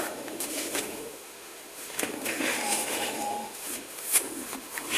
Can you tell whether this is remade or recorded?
remade